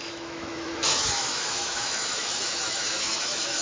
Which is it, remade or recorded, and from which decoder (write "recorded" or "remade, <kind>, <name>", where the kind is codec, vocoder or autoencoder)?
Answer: remade, autoencoder, DAC-VAE